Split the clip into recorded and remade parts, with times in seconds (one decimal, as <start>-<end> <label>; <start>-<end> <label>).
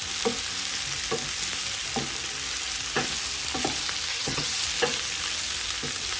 0.0-4.1 recorded; 4.1-4.6 remade; 4.6-6.2 recorded